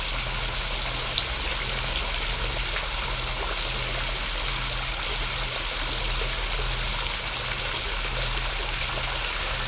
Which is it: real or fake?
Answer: real